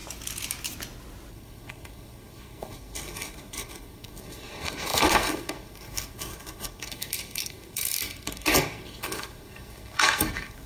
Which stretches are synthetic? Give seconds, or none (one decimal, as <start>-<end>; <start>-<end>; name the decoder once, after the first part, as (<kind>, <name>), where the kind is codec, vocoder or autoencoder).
1.3-10.7 (codec, SNAC)